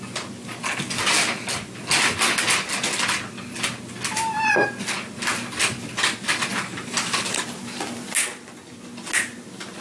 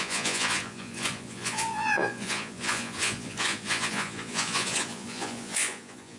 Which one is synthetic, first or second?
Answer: second